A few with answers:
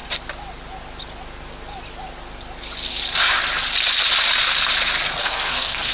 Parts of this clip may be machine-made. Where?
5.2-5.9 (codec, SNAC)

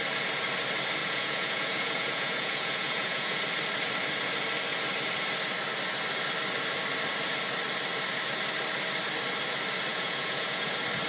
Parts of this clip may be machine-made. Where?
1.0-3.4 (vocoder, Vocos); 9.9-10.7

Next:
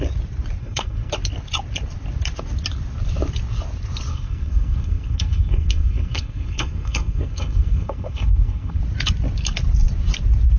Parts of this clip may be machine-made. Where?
0.6-1.1 (codec, SNAC); 4.1-8.8

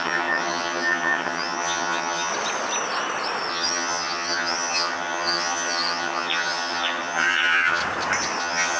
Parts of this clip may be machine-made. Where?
0.0-2.3 (vocoder, HiFi-GAN); 3.5-7.8; 8.4-8.8